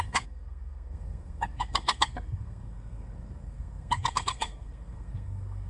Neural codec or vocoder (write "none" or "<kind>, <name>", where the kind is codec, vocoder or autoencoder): codec, SNAC